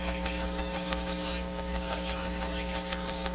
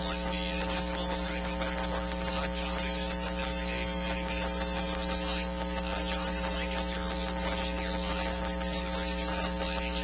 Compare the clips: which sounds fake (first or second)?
first